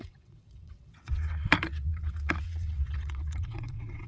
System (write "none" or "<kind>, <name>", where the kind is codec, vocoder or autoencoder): vocoder, WaveNeXt